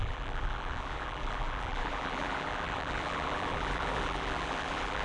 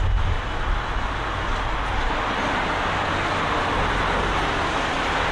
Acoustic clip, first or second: second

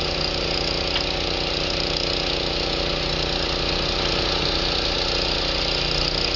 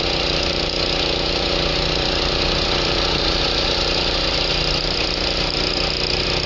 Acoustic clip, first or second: first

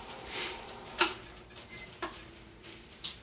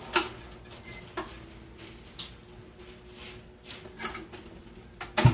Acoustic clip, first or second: second